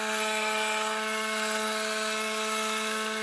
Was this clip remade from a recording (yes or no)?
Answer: yes